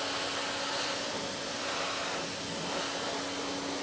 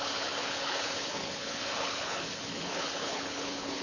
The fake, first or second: second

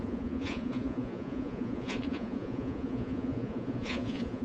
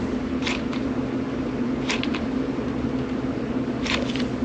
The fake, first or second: first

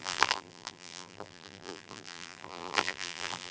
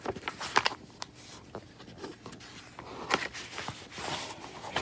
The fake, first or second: first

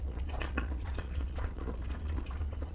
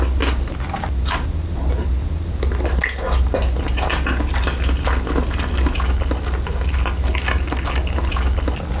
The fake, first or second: first